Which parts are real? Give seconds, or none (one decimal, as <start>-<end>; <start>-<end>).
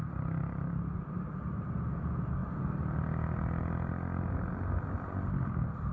0.0-5.9